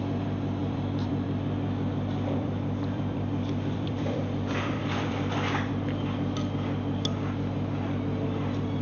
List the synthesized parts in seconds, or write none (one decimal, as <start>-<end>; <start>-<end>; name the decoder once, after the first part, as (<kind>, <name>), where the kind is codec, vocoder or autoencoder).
0.6-5.7 (vocoder, BigVGAN v2)